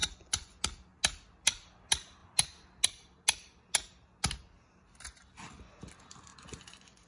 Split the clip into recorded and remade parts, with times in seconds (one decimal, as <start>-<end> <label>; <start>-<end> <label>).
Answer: 0.0-0.6 remade; 0.6-6.3 recorded; 6.3-7.1 remade